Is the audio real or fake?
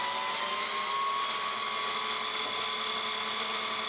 real